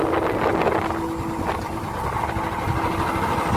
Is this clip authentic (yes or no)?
yes